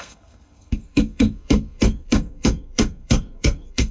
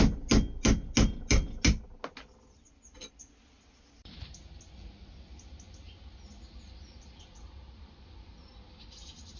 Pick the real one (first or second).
second